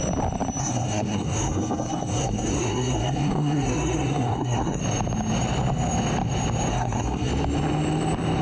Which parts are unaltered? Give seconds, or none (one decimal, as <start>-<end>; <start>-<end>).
0.0-0.6; 4.8-6.7; 7.3-8.4